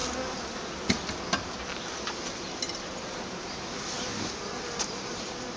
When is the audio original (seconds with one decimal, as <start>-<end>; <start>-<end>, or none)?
0.0-2.6